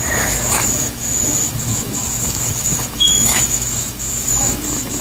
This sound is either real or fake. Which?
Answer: fake